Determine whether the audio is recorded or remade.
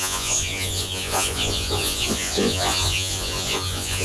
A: remade